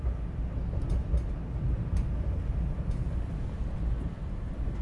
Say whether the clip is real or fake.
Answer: real